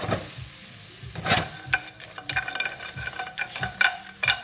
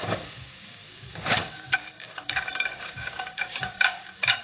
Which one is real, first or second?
first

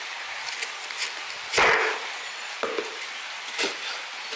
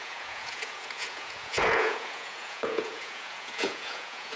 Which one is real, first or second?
first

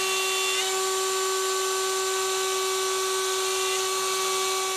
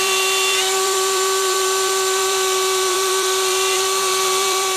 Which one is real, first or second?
first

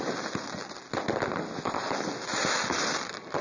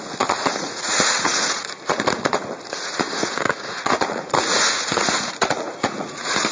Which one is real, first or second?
first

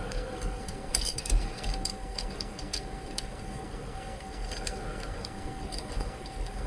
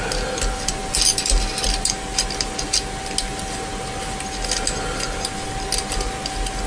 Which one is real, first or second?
second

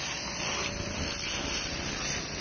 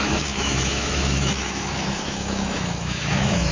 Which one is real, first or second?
first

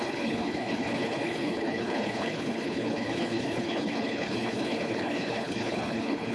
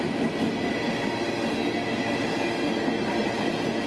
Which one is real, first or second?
second